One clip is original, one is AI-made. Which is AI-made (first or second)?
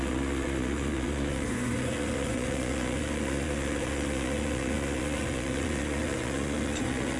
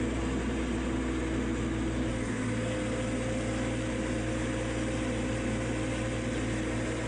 first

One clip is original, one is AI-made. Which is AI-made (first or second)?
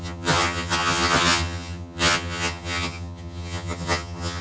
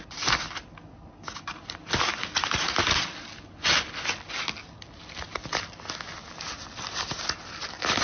first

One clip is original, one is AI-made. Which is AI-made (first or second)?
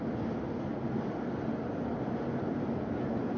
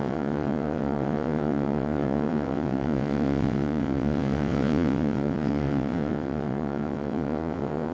second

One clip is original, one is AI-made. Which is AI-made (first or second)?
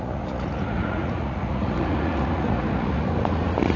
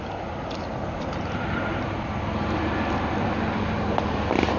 first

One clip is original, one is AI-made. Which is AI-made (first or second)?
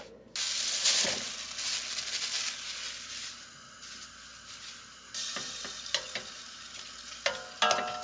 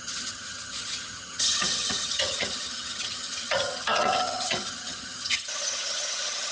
second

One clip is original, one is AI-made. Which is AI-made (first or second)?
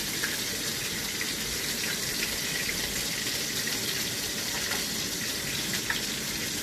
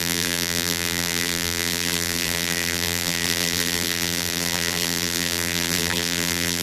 second